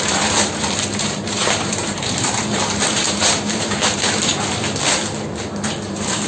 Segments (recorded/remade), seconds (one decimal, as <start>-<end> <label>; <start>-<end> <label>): 0.0-4.3 remade; 4.3-5.7 recorded; 5.7-6.3 remade